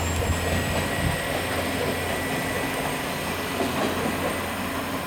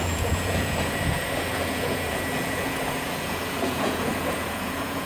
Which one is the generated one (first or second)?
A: second